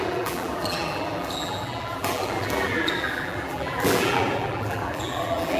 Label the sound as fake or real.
fake